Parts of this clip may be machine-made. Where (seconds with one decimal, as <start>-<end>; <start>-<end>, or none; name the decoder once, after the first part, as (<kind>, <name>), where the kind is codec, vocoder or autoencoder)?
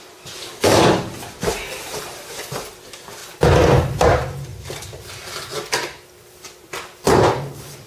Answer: 0.4-0.9 (codec, DAC)